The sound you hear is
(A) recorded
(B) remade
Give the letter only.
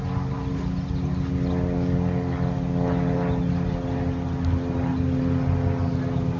A